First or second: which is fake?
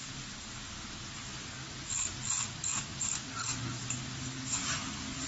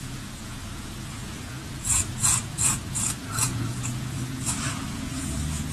second